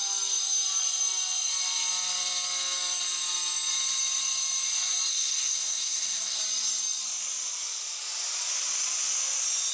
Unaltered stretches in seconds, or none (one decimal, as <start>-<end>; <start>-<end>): 0.0-5.1; 6.4-9.7